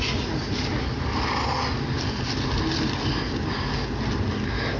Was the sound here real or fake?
real